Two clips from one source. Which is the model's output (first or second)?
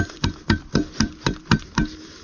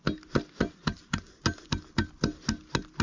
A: first